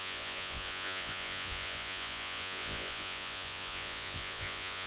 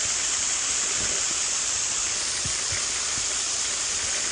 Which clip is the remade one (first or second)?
first